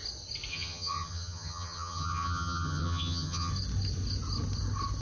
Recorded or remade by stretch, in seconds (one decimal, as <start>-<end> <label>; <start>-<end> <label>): 0.0-0.5 recorded; 0.5-3.5 remade; 3.5-5.0 recorded